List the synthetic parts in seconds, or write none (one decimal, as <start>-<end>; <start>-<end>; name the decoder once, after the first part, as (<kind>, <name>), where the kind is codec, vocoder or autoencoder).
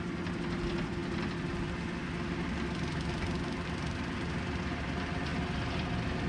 none